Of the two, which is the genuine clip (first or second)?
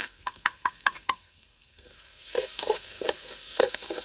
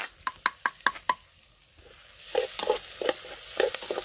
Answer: second